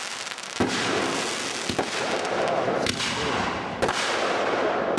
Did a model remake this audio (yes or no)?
no